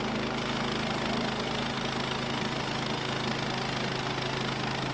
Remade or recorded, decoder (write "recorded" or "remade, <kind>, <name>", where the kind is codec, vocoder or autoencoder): recorded